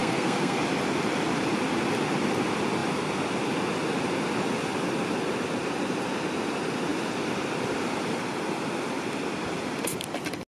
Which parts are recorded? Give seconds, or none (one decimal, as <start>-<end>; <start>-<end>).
0.6-10.6